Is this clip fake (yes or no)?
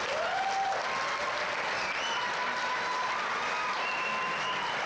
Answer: no